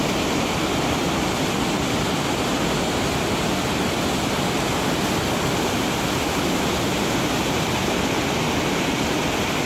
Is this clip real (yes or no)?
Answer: yes